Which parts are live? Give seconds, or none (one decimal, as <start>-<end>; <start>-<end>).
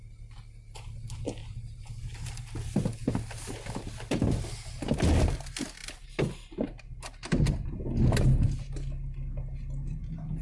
0.0-1.4; 2.5-10.4